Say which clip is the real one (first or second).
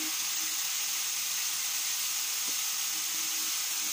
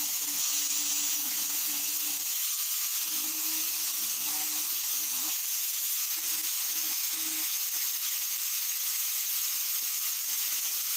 first